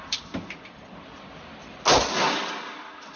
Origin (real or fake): real